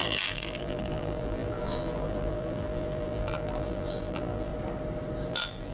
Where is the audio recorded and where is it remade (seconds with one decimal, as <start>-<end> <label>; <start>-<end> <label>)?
0.0-4.5 remade; 4.5-5.3 recorded; 5.3-5.7 remade